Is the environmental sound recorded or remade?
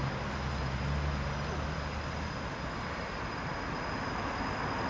recorded